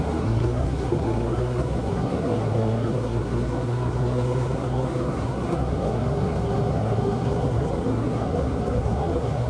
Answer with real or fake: fake